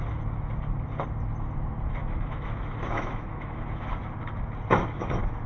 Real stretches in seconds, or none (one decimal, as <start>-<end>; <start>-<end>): 0.0-2.0; 3.9-4.8